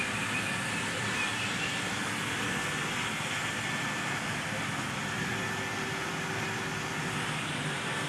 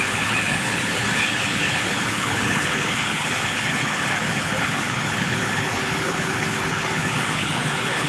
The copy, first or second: second